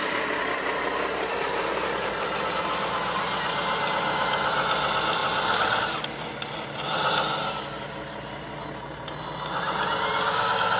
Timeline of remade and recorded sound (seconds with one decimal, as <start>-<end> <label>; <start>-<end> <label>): 0.0-10.8 recorded